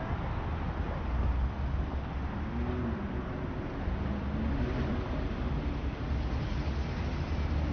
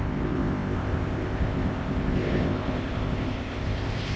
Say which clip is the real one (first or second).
first